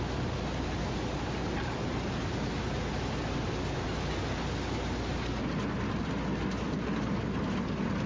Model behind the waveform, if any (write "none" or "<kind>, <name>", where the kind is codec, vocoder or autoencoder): none